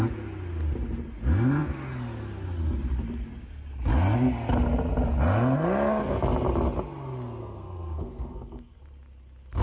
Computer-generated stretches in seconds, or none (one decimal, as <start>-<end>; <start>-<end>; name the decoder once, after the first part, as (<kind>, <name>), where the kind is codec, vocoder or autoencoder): 7.4-8.8 (codec, SNAC)